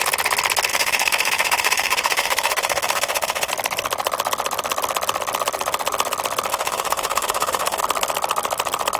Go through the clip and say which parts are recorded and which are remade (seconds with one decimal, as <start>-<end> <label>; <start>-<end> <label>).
0.0-0.7 recorded; 0.7-3.5 remade; 3.5-6.5 recorded; 6.5-7.8 remade; 7.8-9.0 recorded